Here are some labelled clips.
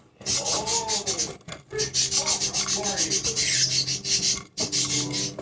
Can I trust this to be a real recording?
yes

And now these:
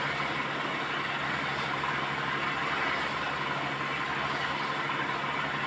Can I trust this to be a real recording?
yes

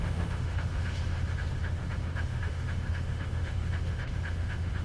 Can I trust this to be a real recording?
no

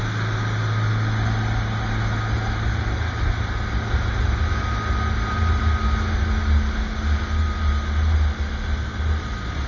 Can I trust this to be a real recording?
yes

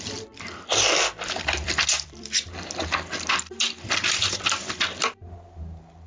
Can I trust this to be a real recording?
no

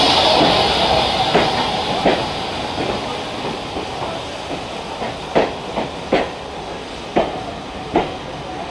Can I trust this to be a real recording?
yes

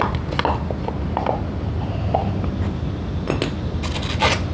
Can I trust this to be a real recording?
yes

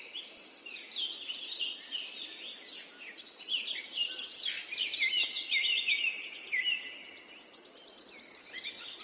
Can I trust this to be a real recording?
yes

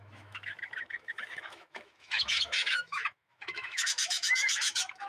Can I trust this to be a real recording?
no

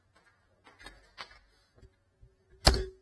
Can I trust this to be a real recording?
yes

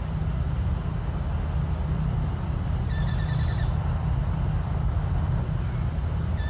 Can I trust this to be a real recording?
yes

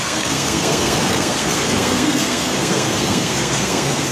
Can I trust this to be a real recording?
no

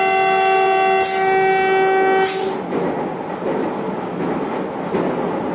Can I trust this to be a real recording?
yes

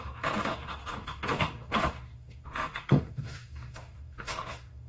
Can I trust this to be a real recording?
no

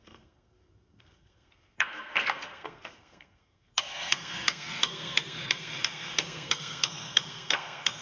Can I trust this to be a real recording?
no